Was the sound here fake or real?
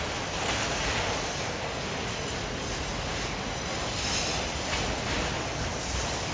real